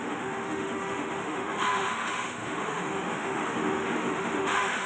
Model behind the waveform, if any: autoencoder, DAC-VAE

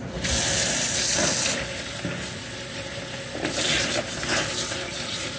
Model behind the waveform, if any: none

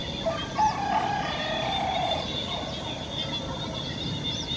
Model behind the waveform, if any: none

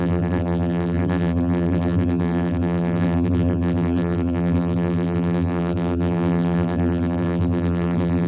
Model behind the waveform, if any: vocoder, BigVGAN v2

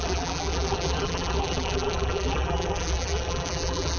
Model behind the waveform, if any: vocoder, BigVGAN v2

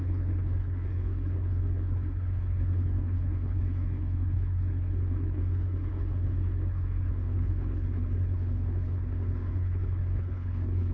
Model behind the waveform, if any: codec, HILCodec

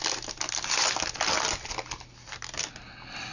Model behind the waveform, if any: none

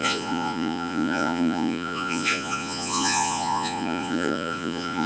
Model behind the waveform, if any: vocoder, Vocos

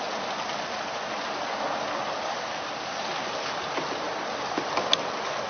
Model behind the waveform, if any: none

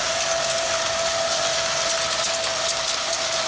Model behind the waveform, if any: none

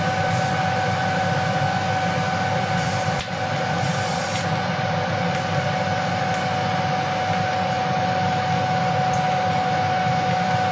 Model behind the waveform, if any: none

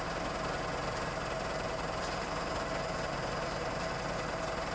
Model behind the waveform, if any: none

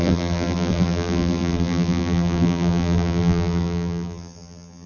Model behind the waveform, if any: vocoder, BigVGAN v2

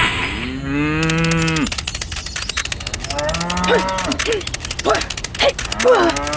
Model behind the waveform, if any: none